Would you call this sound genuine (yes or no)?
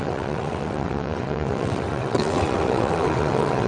no